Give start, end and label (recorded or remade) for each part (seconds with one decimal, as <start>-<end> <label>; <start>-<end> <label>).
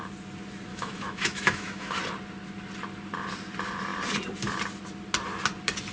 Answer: 0.0-0.7 recorded; 0.7-2.0 remade; 2.0-5.9 recorded